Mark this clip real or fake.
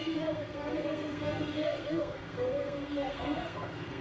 fake